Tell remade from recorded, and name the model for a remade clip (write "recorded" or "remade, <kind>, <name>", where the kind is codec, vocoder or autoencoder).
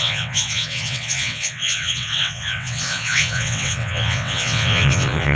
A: remade, vocoder, WaveNeXt